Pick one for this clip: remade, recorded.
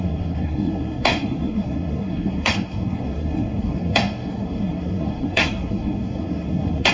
remade